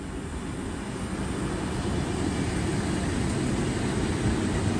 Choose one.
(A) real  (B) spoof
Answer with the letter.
A